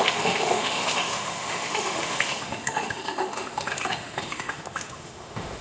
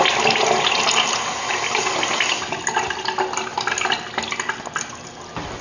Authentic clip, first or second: second